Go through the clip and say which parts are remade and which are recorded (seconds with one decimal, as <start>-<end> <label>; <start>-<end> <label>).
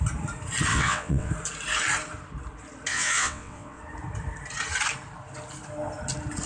0.0-0.7 recorded; 0.7-1.3 remade; 1.3-2.9 recorded; 2.9-3.8 remade; 3.8-6.5 recorded